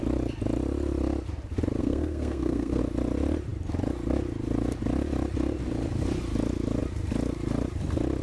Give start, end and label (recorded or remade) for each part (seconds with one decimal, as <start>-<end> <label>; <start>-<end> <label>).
0.0-1.8 recorded; 1.8-2.8 remade; 2.8-8.2 recorded